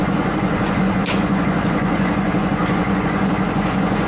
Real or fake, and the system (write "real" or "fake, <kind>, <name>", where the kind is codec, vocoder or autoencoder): fake, vocoder, Vocos